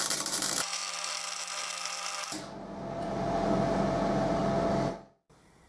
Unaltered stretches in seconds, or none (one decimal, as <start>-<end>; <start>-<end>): 0.8-3.0; 4.4-5.3